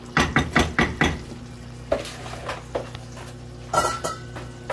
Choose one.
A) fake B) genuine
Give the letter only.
B